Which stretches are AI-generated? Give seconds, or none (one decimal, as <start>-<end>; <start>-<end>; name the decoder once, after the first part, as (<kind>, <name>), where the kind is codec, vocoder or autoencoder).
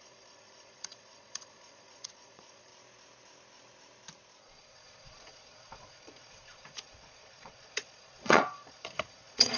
0.0-2.7 (vocoder, Vocos); 4.4-9.6